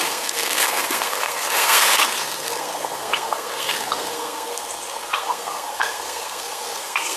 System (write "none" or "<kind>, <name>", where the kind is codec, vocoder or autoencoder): codec, SNAC